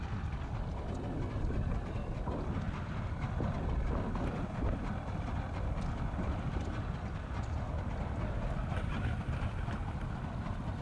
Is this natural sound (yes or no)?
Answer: yes